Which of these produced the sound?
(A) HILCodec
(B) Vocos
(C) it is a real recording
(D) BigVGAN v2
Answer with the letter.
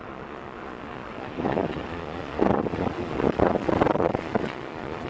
B